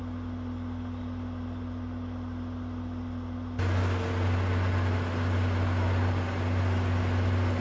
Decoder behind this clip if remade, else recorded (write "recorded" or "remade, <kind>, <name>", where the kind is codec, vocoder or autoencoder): recorded